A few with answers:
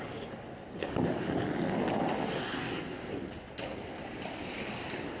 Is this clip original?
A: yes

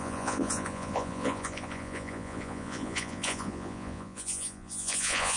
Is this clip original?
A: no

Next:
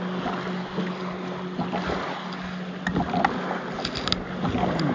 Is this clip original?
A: yes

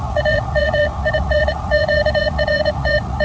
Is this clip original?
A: no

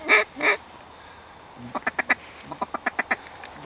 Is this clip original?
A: yes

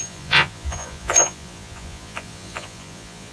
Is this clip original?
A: no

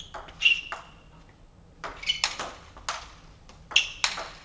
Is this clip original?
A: yes